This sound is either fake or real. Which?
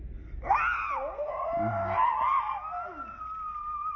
real